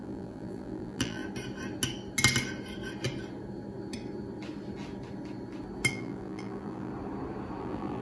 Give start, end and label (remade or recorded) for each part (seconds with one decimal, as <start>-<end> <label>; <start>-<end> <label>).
0.0-1.2 remade; 1.2-5.9 recorded; 5.9-6.9 remade; 6.9-7.6 recorded; 7.6-8.0 remade